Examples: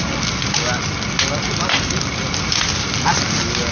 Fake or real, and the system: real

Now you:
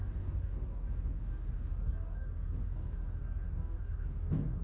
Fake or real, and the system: fake, codec, DAC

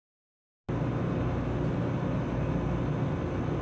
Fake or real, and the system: real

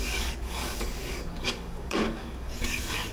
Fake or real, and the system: fake, codec, DAC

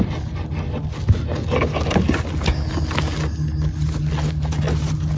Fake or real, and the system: real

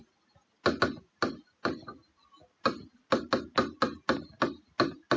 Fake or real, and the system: real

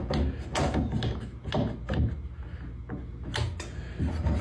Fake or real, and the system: real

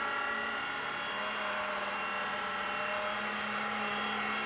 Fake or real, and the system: real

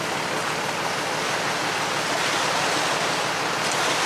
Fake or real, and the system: real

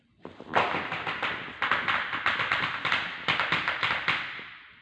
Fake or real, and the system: real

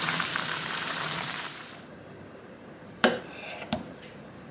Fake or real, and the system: fake, vocoder, BigVGAN v2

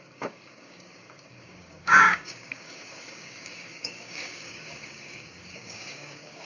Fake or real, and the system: fake, codec, DAC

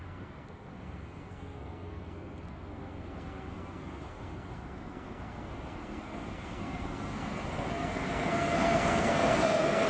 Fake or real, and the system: fake, codec, SNAC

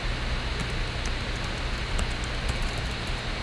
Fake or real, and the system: real